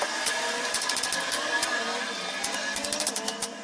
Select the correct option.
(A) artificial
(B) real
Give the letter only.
B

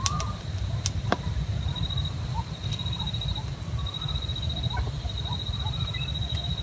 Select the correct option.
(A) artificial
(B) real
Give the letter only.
B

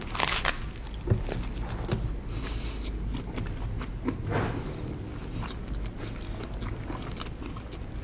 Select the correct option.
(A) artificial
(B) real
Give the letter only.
B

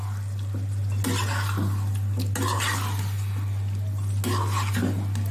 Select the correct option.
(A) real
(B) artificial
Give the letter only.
A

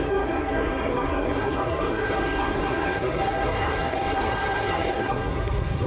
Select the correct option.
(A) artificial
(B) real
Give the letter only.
A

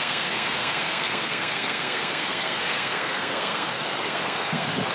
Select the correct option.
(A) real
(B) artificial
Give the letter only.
B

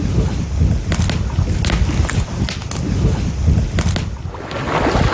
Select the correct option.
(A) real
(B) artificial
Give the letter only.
A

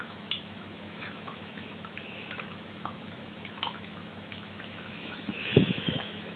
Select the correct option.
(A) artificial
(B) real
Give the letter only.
A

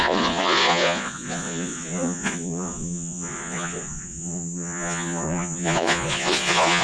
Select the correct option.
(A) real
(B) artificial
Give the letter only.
B